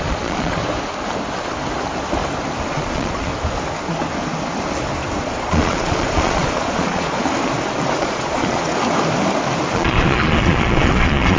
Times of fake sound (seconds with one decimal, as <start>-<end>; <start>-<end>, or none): 0.0-0.6; 2.7-3.3; 5.2-7.2; 8.0-8.7; 9.7-11.4

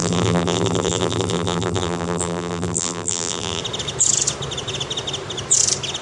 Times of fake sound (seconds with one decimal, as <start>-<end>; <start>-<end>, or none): 0.0-3.6

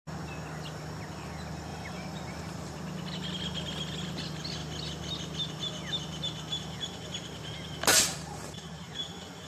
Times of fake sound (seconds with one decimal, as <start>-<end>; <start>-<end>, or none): 1.7-2.8; 7.9-8.9

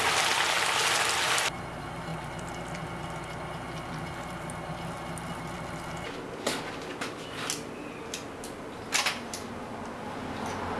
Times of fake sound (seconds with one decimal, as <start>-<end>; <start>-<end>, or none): none

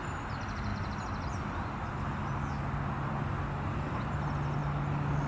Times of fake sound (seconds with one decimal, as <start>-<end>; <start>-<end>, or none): none

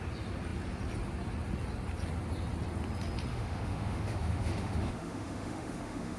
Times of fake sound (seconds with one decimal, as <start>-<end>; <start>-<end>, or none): 3.3-6.2